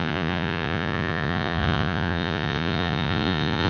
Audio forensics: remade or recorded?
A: remade